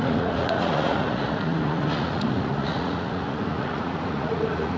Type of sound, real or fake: fake